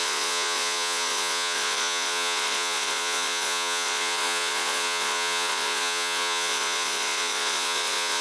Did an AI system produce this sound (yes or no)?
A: yes